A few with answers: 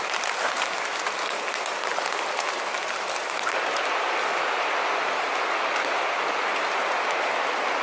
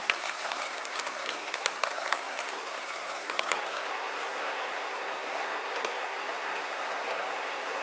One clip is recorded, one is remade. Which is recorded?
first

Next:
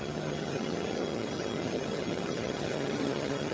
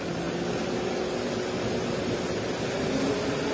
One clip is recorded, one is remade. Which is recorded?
second